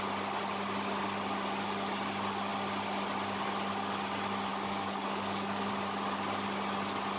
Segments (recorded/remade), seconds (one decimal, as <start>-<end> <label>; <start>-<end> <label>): 0.0-4.5 recorded; 4.5-5.7 remade; 5.7-7.2 recorded